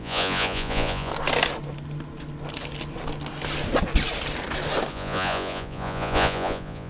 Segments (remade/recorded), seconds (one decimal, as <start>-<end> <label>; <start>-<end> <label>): 0.0-1.1 remade; 1.1-4.9 recorded; 4.9-6.9 remade